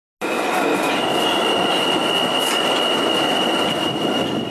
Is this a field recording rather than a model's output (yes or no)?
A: yes